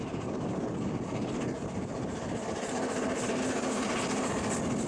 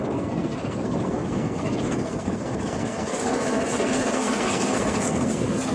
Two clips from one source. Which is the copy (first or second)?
second